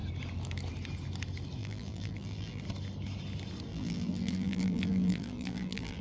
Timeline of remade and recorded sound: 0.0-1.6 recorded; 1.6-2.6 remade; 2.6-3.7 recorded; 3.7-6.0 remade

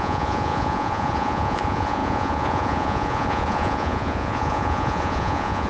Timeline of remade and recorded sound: 0.0-5.7 remade

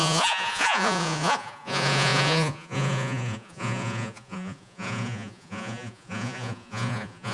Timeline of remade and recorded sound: 0.0-7.3 remade

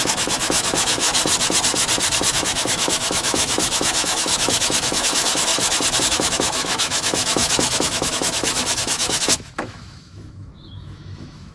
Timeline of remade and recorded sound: 0.0-1.1 remade; 1.1-2.3 recorded; 2.3-5.5 remade; 5.5-6.0 recorded; 6.0-11.5 remade

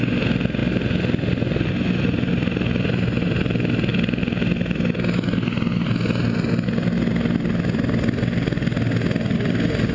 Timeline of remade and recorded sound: 0.0-9.9 recorded

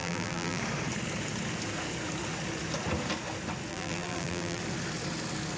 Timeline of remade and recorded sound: 0.0-0.6 remade; 0.6-3.7 recorded; 3.7-4.6 remade; 4.6-5.6 recorded

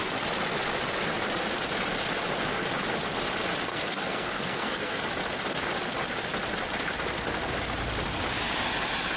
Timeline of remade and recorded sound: 0.0-3.7 recorded; 3.7-5.0 remade; 5.0-9.2 recorded

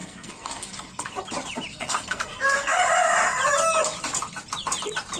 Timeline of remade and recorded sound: 0.0-1.1 remade; 1.1-1.7 recorded; 1.7-2.8 remade; 2.8-5.2 recorded